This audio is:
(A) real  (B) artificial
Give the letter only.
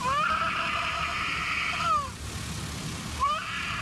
A